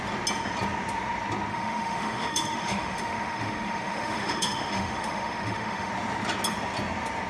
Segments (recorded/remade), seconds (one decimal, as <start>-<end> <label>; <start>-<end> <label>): 0.0-1.5 recorded; 1.5-5.9 remade; 5.9-7.3 recorded